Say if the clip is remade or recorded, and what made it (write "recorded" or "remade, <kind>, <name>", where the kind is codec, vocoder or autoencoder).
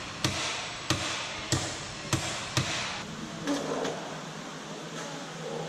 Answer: recorded